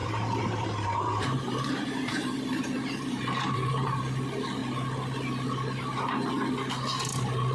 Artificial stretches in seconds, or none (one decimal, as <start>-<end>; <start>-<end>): 0.0-4.0